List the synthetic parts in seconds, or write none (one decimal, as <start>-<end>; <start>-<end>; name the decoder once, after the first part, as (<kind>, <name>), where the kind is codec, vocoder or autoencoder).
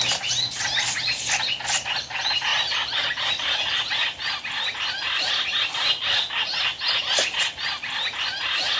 none